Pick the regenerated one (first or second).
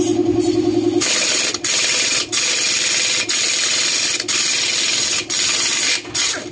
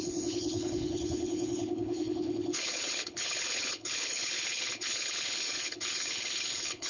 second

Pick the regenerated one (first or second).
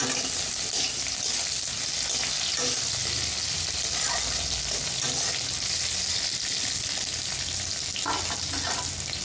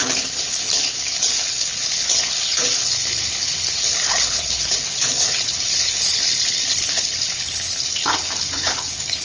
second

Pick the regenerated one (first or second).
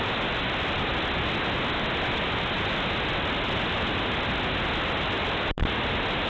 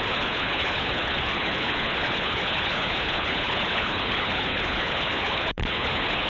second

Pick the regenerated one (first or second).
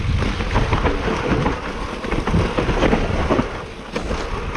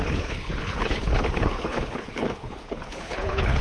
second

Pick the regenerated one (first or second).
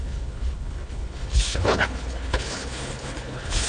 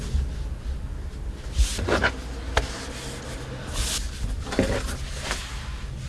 first